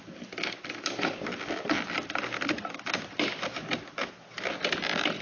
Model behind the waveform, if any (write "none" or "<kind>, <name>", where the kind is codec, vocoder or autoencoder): none